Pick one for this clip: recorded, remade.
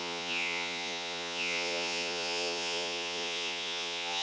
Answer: remade